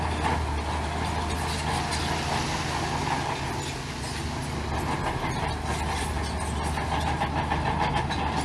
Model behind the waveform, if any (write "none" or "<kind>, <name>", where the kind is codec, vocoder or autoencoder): none